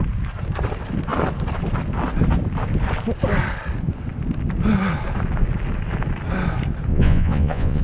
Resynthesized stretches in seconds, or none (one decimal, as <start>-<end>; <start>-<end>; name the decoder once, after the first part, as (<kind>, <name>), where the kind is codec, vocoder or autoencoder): 6.9-7.8 (vocoder, Vocos)

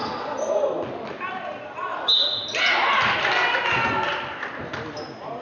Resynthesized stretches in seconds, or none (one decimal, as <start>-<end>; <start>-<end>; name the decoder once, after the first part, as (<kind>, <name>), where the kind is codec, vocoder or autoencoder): none

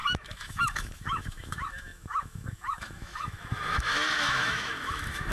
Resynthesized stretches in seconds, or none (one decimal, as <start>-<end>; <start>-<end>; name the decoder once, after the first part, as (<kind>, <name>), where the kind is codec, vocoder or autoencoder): 0.0-5.3 (autoencoder, DAC-VAE)

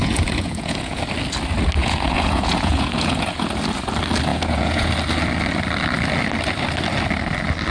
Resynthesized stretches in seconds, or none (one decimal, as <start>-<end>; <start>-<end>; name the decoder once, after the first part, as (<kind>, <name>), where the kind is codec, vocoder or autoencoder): 0.0-1.0 (vocoder, Vocos); 1.8-3.5; 4.3-4.9